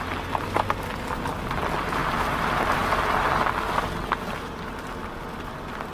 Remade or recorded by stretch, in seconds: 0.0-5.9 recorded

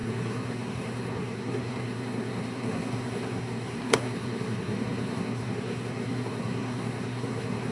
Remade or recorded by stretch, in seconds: 0.0-7.7 remade

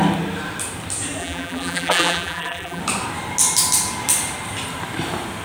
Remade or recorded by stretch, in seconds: 0.0-1.2 recorded; 1.2-2.8 remade; 2.8-5.4 recorded

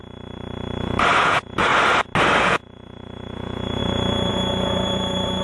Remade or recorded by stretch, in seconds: 0.0-1.2 recorded; 1.2-1.7 remade; 1.7-2.4 recorded; 2.4-5.4 remade

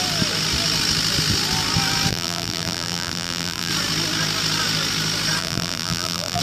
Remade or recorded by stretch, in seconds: 0.0-2.1 recorded; 2.1-3.7 remade; 3.7-5.4 recorded; 5.4-6.4 remade